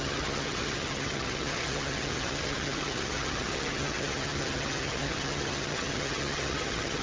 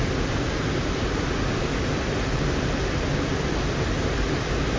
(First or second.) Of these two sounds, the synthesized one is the first